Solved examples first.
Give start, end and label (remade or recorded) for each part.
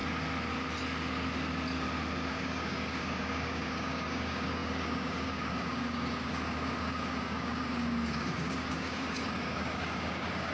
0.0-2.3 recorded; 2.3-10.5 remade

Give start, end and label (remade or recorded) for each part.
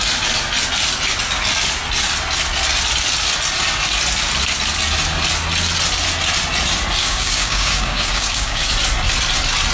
0.0-7.0 recorded; 7.0-8.7 remade; 8.7-9.7 recorded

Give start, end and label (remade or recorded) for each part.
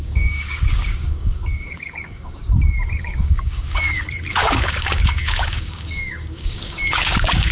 0.0-2.4 remade; 2.4-3.0 recorded; 3.0-7.5 remade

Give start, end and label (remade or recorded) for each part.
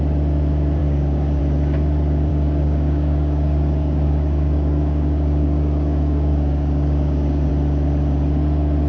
0.0-0.8 recorded; 0.8-1.4 remade; 1.4-2.3 recorded; 2.3-7.5 remade; 7.5-8.9 recorded